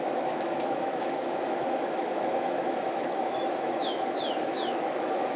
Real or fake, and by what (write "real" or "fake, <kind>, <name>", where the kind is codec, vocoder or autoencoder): fake, autoencoder, DAC-VAE